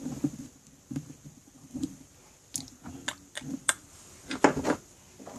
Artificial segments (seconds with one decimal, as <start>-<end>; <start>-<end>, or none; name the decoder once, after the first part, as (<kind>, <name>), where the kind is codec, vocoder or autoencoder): 1.4-2.1 (vocoder, BigVGAN v2); 3.6-4.4